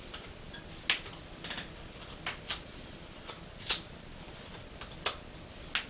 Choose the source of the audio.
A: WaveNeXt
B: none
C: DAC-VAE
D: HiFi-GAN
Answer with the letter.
B